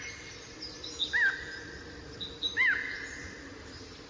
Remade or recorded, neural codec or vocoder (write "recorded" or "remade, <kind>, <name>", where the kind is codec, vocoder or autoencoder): recorded